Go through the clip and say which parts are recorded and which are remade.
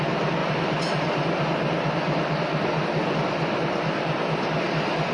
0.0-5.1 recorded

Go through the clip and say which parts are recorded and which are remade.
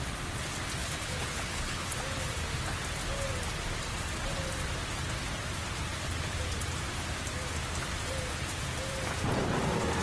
0.0-0.8 recorded; 0.8-1.9 remade; 1.9-10.0 recorded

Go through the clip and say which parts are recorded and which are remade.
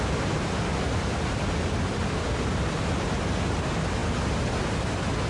0.0-5.3 recorded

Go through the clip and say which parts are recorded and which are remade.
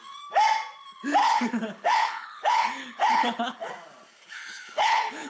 0.0-1.2 recorded; 1.2-3.7 remade; 3.7-4.2 recorded; 4.2-5.3 remade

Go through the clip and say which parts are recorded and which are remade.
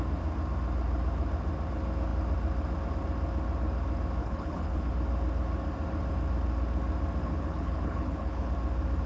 0.0-4.2 recorded; 4.2-4.9 remade; 4.9-7.2 recorded; 7.2-8.5 remade; 8.5-9.1 recorded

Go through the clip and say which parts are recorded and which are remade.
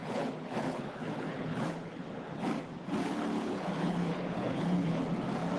0.0-2.4 remade; 2.4-3.0 recorded; 3.0-5.0 remade; 5.0-5.6 recorded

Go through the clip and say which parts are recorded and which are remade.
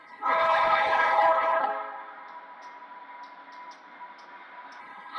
0.0-1.7 remade; 1.7-4.8 recorded; 4.8-5.2 remade